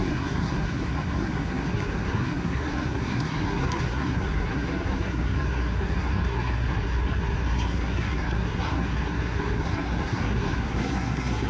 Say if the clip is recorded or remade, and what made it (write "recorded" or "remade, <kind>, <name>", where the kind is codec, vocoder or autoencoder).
remade, codec, SNAC